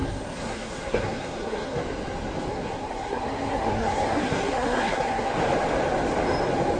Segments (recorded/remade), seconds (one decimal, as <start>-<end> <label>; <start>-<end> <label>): 0.0-1.8 remade; 1.8-2.5 recorded; 2.5-5.3 remade; 5.3-6.8 recorded